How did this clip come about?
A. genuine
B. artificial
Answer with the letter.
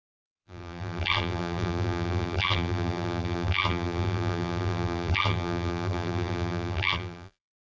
B